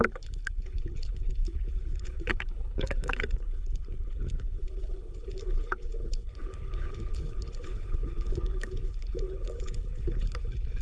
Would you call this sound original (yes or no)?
no